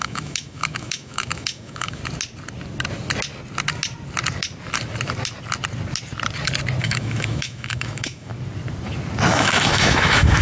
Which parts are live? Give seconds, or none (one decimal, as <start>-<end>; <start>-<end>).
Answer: 2.0-6.8; 8.3-9.3